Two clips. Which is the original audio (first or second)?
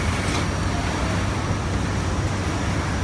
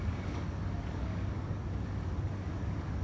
first